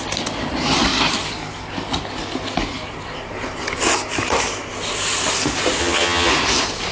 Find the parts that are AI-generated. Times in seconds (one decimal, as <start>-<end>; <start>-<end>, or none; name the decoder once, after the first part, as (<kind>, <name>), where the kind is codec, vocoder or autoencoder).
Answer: 5.8-6.3 (vocoder, HiFi-GAN)